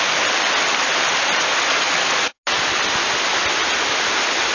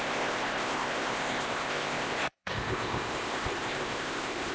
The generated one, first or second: second